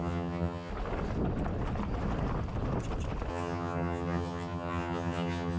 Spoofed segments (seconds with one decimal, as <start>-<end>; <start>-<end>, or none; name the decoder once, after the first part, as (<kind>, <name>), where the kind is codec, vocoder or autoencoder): 0.0-0.7 (vocoder, HiFi-GAN); 3.3-5.6